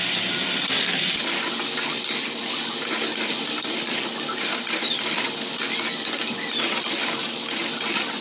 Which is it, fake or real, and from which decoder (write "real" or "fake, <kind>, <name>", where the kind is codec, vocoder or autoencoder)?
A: real